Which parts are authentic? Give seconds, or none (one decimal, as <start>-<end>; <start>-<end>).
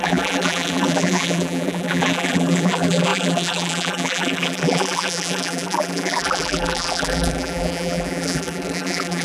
none